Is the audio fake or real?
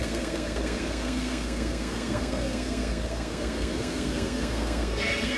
fake